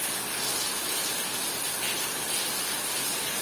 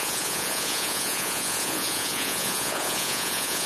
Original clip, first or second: first